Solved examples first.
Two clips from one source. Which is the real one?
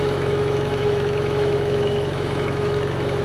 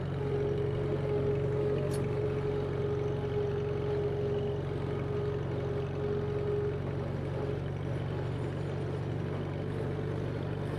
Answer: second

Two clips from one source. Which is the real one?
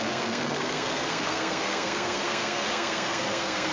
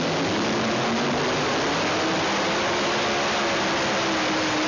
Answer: second